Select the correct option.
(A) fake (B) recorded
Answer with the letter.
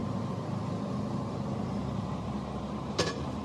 B